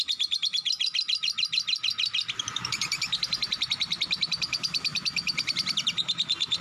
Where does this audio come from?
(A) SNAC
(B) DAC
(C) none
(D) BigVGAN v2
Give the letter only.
D